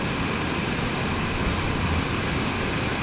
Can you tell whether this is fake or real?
real